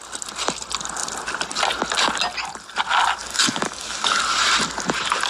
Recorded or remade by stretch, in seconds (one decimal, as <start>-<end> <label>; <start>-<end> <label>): 0.0-3.2 recorded; 3.2-4.2 remade; 4.2-5.3 recorded